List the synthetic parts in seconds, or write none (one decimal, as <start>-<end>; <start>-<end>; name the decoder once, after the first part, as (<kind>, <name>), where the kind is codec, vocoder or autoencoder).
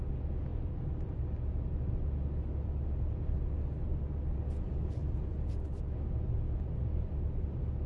none